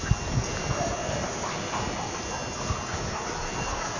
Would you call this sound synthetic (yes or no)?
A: no